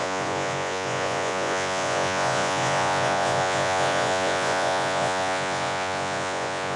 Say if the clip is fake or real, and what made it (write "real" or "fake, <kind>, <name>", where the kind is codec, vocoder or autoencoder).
fake, vocoder, Vocos